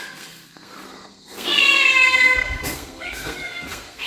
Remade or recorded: remade